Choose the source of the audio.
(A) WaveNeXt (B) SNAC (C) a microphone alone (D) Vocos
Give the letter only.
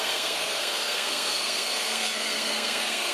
B